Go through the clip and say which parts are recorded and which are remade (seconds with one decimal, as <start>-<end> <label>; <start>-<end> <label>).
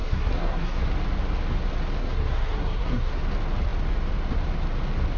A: 0.0-0.8 remade; 0.8-2.0 recorded; 2.0-3.2 remade; 3.2-5.2 recorded